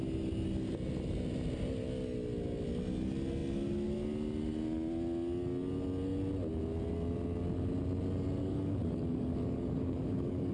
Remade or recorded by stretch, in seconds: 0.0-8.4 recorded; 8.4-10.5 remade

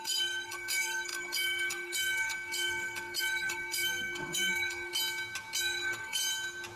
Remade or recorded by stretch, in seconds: 0.0-4.9 remade; 4.9-5.6 recorded; 5.6-6.2 remade; 6.2-6.8 recorded

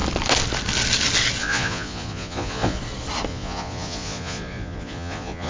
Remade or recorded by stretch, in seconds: 0.0-1.4 recorded; 1.4-2.8 remade; 2.8-3.3 recorded; 3.3-5.5 remade

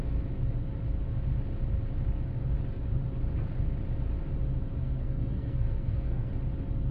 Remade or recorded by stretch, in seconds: 0.0-4.8 recorded; 4.8-6.3 remade; 6.3-6.9 recorded

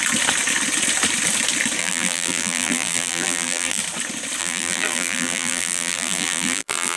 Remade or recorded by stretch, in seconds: 0.0-1.8 recorded; 1.8-3.8 remade; 3.8-4.4 recorded; 4.4-7.0 remade

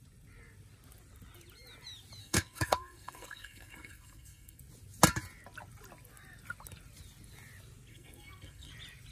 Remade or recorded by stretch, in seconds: 0.0-2.2 recorded; 2.2-4.6 remade; 4.6-7.9 recorded; 7.9-8.7 remade; 8.7-9.1 recorded

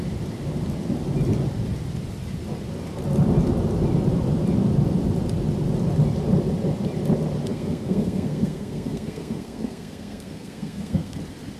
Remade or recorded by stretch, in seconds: 0.0-7.5 recorded; 7.5-11.2 remade; 11.2-11.6 recorded

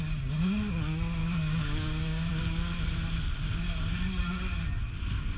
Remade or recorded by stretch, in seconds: 0.0-1.2 recorded; 1.2-2.3 remade; 2.3-5.4 recorded